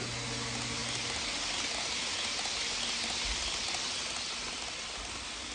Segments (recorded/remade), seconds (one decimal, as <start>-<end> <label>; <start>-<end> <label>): 0.0-5.5 recorded

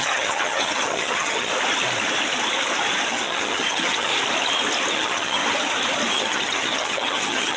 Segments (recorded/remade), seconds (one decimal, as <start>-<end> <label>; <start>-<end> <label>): 0.0-1.5 remade; 1.5-3.1 recorded; 3.1-4.1 remade; 4.1-4.9 recorded; 4.9-5.4 remade; 5.4-6.1 recorded; 6.1-7.6 remade

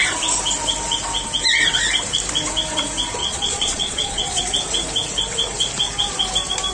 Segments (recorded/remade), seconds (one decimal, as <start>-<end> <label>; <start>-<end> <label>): 0.0-3.2 recorded; 3.2-4.4 remade; 4.4-6.7 recorded

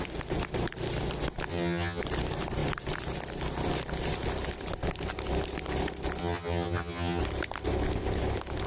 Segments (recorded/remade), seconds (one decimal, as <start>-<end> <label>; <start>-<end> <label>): 0.0-1.5 recorded; 1.5-2.0 remade; 2.0-6.2 recorded; 6.2-7.2 remade; 7.2-8.7 recorded

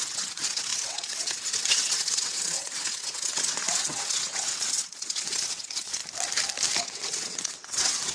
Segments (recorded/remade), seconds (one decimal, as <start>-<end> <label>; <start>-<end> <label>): 0.0-6.0 remade; 6.0-6.8 recorded; 6.8-8.1 remade

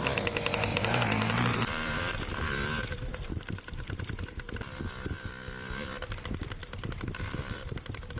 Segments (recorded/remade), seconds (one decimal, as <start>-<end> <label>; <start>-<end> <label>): 0.0-0.7 recorded; 0.7-2.1 remade; 2.1-3.1 recorded; 3.1-4.6 remade; 4.6-6.6 recorded; 6.6-8.2 remade

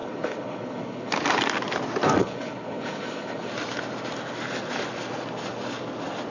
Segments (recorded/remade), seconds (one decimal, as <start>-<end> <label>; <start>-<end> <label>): 0.0-1.1 remade; 1.1-2.2 recorded; 2.2-3.5 remade; 3.5-6.3 recorded